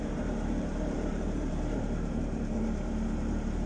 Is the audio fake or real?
fake